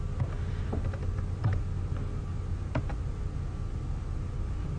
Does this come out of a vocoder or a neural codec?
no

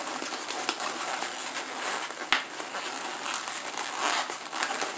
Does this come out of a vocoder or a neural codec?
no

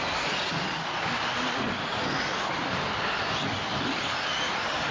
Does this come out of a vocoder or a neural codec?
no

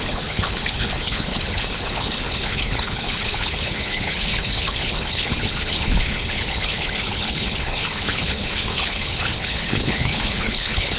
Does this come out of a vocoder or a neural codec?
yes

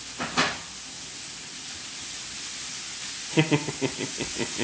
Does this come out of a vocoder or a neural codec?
no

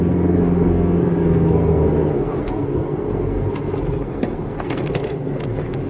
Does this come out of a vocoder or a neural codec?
yes